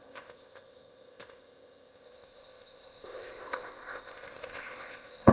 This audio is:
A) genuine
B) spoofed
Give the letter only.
B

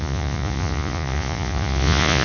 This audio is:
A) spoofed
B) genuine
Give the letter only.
A